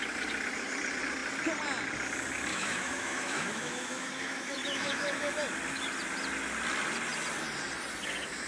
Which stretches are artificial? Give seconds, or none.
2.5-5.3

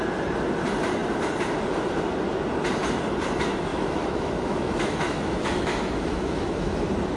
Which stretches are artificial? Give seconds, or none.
3.7-6.7

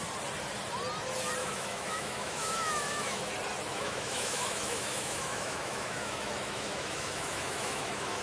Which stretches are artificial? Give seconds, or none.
1.4-3.3; 3.7-8.2

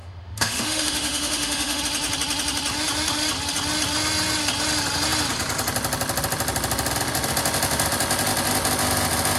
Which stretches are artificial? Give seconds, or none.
0.0-1.8

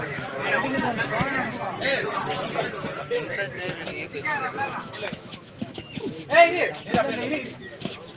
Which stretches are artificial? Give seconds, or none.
3.9-6.1

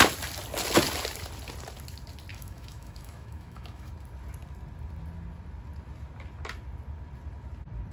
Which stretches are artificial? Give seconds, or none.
2.3-3.9

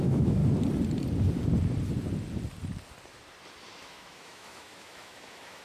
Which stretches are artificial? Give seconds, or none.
0.0-0.4; 3.8-5.6

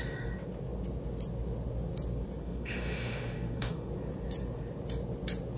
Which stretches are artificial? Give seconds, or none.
2.4-3.9